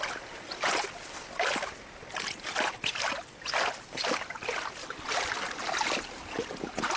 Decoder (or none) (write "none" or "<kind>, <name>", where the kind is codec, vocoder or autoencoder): none